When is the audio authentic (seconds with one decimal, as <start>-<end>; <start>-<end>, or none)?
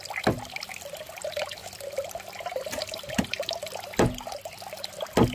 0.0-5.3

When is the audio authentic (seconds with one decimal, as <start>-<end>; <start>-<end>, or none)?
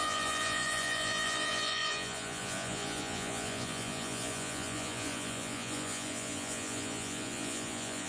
none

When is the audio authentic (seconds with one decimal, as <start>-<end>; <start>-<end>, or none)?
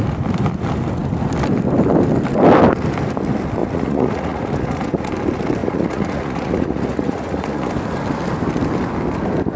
0.0-3.6; 5.1-5.6; 7.7-9.6